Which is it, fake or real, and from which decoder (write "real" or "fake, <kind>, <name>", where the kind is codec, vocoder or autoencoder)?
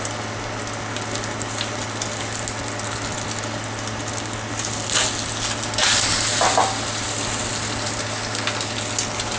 real